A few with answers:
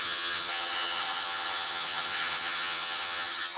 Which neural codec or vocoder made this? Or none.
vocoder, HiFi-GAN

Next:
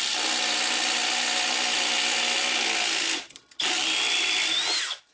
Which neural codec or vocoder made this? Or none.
none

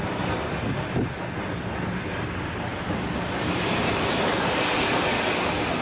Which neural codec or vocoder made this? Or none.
none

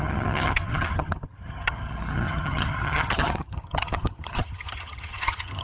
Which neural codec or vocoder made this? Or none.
vocoder, HiFi-GAN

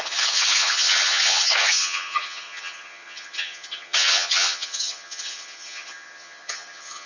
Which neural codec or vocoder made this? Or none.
vocoder, HiFi-GAN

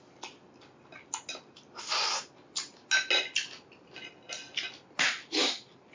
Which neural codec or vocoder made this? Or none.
none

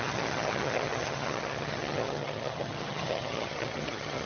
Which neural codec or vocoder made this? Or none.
vocoder, HiFi-GAN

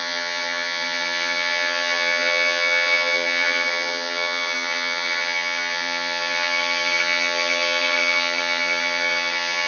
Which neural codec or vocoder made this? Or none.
vocoder, HiFi-GAN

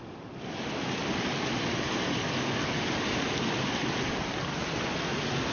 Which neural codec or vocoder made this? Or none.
none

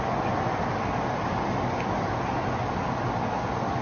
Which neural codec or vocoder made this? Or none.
none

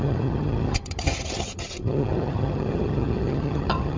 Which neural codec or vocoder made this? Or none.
vocoder, HiFi-GAN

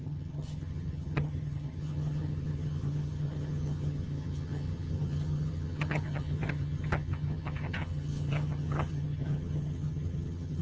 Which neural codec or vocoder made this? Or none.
vocoder, HiFi-GAN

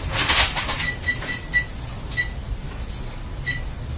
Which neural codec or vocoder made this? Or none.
none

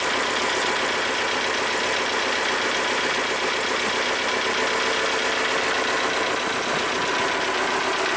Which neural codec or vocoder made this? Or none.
none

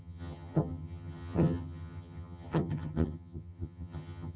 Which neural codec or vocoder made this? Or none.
vocoder, HiFi-GAN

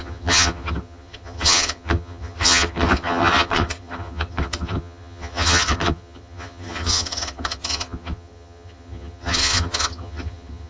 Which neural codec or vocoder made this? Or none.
vocoder, HiFi-GAN